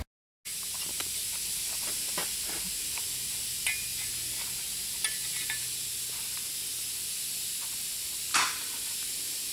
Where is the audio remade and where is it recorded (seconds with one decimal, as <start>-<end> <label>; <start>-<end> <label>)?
0.0-9.5 recorded